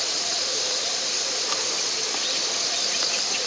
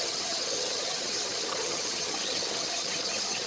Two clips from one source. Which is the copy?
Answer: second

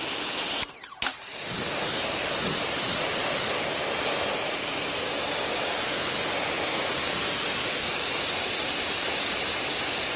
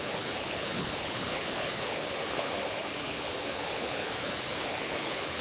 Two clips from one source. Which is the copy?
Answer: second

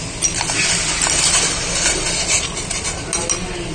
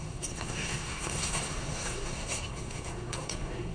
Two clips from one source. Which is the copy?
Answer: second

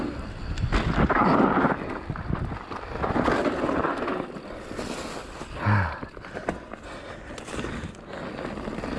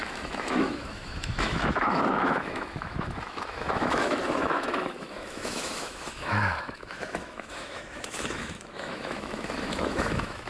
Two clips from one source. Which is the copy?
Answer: second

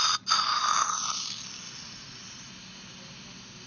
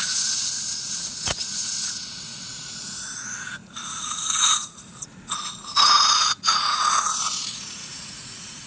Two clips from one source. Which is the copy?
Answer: second